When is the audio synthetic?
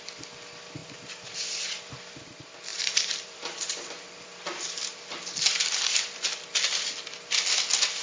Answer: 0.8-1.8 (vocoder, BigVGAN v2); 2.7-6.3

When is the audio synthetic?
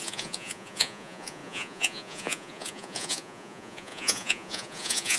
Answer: 0.0-5.2 (vocoder, Vocos)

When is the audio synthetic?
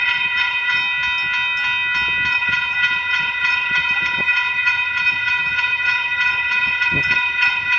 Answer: 0.0-0.8 (vocoder, HiFi-GAN); 2.3-7.8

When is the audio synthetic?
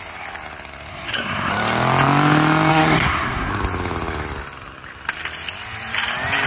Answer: 0.9-1.5 (codec, SNAC); 2.7-3.5